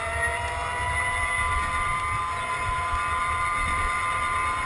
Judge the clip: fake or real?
real